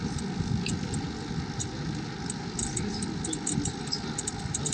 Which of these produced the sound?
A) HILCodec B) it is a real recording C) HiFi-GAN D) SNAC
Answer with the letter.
B